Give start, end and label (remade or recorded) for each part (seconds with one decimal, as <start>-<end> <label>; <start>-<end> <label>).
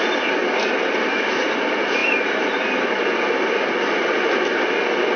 0.0-5.2 recorded